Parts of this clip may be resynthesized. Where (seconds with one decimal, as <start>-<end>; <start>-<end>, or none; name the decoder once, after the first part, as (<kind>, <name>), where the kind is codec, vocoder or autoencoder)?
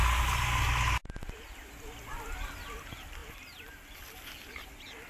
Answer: 2.1-5.1 (vocoder, BigVGAN v2)